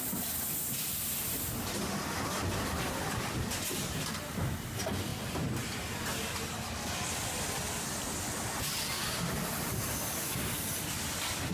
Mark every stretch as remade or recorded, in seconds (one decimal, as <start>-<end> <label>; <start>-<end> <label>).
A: 0.0-11.5 recorded